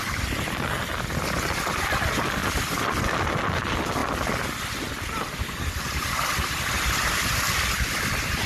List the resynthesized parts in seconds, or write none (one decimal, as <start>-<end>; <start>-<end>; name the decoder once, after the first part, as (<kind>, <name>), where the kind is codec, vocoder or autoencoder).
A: none